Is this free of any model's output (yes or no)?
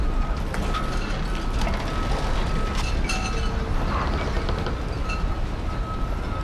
yes